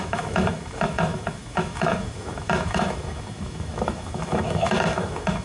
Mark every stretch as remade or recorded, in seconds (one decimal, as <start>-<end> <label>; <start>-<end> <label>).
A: 0.0-5.4 remade